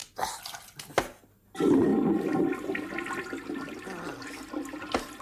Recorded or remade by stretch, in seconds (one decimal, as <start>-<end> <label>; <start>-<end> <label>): 0.0-5.2 recorded